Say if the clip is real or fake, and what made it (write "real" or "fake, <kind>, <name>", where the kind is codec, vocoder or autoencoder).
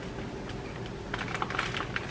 real